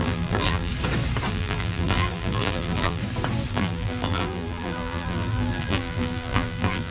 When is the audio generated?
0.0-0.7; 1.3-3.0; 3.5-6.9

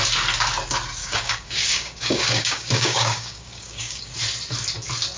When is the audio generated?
1.0-4.1

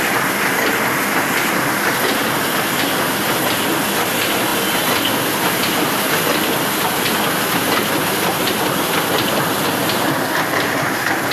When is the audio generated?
none